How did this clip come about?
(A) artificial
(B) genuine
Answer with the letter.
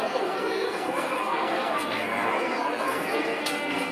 A